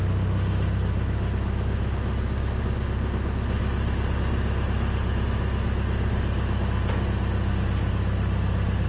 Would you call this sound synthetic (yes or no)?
no